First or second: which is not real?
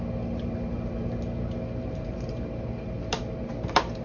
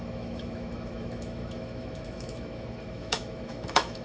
second